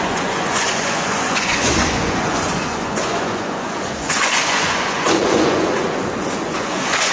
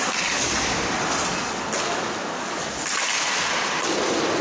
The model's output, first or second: first